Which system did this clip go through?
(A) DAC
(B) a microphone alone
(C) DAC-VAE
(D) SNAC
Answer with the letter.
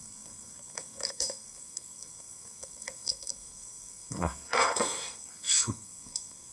D